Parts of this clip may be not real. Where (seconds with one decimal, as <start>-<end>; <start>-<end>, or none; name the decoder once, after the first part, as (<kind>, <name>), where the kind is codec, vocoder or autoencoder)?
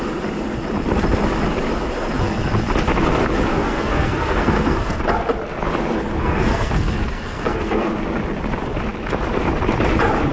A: 3.5-5.0 (codec, SNAC); 6.2-7.9